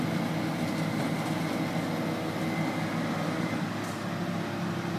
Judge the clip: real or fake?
real